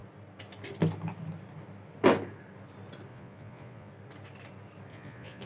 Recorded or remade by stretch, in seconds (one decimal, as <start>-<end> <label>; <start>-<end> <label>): 0.0-3.1 recorded; 3.1-3.9 remade; 3.9-4.9 recorded; 4.9-5.5 remade